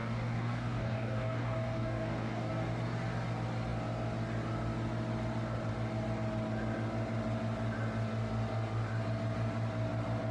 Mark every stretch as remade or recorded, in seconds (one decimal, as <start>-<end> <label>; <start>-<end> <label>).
0.0-2.5 remade; 2.5-10.3 recorded

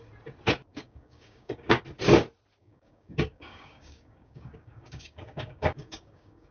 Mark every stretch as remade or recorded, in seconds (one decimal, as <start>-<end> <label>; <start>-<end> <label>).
0.0-0.7 recorded; 0.7-1.8 remade; 1.8-2.6 recorded; 2.6-6.5 remade

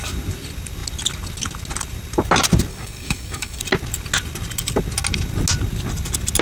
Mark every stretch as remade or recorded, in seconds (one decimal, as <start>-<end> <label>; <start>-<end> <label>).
0.0-2.7 recorded; 2.7-3.6 remade; 3.6-6.4 recorded

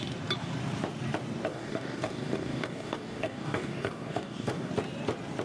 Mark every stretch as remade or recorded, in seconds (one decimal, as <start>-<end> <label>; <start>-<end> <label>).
0.0-1.5 recorded; 1.5-4.7 remade; 4.7-5.4 recorded

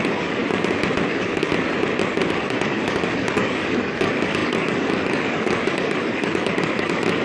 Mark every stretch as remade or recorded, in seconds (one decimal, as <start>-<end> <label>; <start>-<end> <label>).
0.0-0.4 remade; 0.4-1.1 recorded; 1.1-1.5 remade; 1.5-2.3 recorded; 2.3-7.2 remade

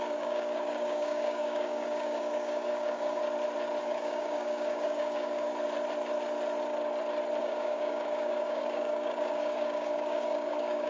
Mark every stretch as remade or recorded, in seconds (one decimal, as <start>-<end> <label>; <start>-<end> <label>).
0.0-3.2 remade; 3.2-3.8 recorded; 3.8-5.5 remade; 5.5-7.4 recorded; 7.4-10.9 remade